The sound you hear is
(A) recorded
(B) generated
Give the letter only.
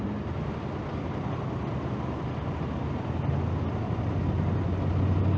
A